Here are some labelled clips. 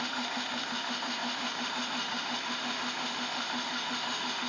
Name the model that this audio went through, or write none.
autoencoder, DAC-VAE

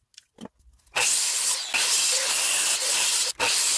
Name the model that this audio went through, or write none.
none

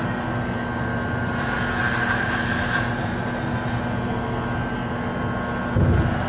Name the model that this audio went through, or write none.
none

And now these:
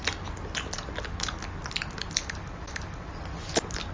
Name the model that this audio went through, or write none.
none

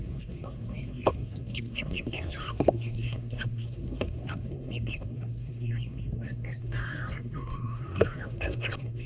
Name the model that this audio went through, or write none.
codec, SNAC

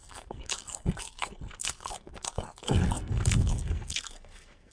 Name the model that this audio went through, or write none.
codec, SNAC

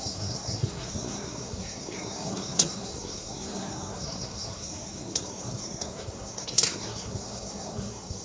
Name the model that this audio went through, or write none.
codec, SNAC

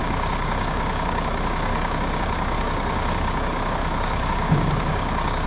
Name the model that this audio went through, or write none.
codec, DAC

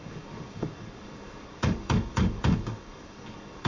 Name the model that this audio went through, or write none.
codec, DAC